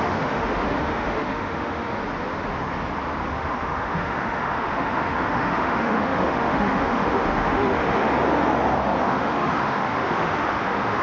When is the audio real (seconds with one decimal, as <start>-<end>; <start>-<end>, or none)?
2.0-3.3; 8.1-9.0